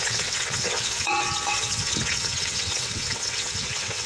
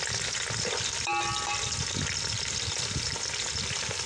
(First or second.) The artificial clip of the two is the first